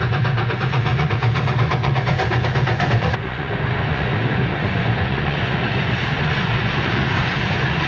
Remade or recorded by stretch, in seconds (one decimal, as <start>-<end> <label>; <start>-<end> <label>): 0.0-7.9 remade